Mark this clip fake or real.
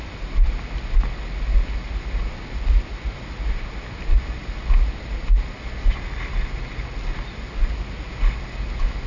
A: real